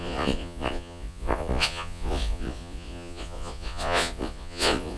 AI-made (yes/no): yes